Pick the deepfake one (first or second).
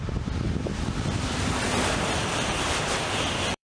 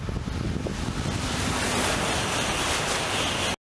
first